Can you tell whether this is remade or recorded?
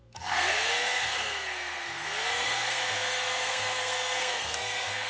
remade